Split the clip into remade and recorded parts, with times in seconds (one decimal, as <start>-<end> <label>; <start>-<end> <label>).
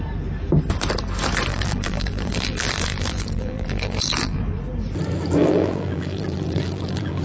0.0-1.5 recorded; 1.5-4.4 remade; 4.4-5.4 recorded; 5.4-7.2 remade